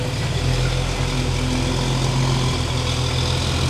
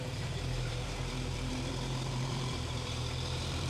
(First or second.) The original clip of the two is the first